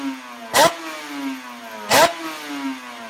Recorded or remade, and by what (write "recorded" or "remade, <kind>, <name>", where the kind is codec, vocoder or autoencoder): recorded